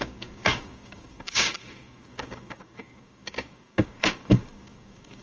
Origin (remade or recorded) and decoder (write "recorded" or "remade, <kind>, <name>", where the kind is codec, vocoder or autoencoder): remade, codec, DAC